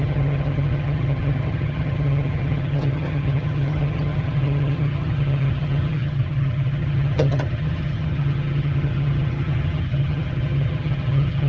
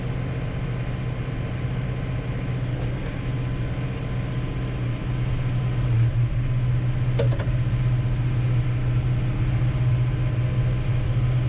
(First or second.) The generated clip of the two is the first